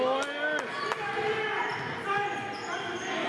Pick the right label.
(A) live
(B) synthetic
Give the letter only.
A